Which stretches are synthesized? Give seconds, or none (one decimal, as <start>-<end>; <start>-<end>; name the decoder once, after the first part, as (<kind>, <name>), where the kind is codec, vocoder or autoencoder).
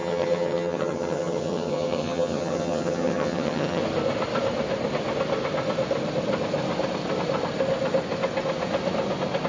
0.0-3.8 (vocoder, HiFi-GAN)